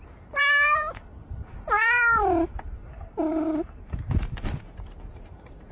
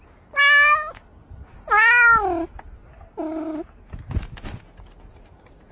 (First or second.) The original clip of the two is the second